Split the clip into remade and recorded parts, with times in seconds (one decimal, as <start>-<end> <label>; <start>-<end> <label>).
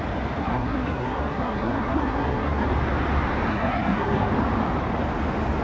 0.0-0.4 recorded; 0.4-2.7 remade; 2.7-3.5 recorded; 3.5-4.3 remade; 4.3-5.6 recorded